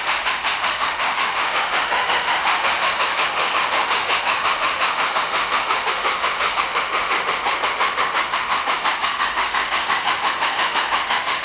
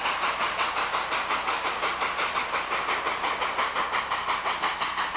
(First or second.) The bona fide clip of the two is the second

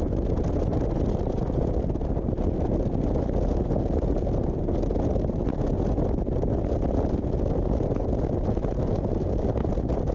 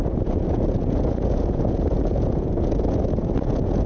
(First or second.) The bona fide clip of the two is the first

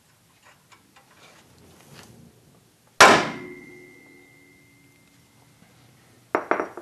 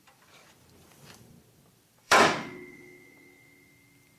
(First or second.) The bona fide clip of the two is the first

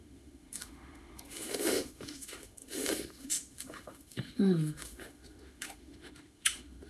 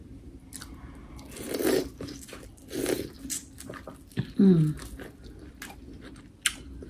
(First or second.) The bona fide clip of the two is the second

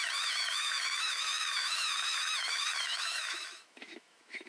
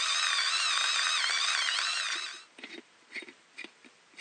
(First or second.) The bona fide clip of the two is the second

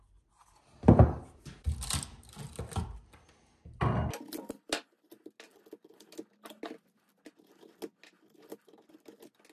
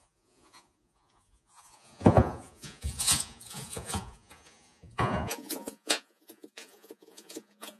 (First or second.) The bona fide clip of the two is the first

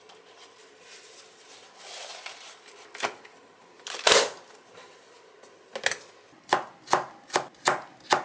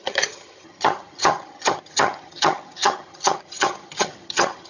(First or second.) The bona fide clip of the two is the first